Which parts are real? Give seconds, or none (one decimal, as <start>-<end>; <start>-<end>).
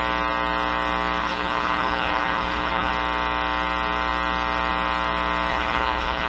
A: 0.0-1.2; 2.9-5.5